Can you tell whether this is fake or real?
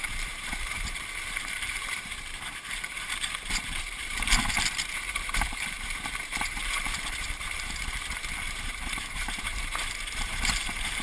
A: fake